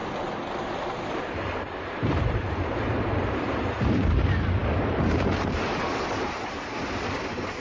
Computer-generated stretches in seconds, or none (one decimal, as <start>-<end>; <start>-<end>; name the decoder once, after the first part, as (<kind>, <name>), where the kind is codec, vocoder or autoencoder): 1.1-6.8 (vocoder, BigVGAN v2)